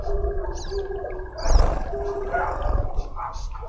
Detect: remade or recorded recorded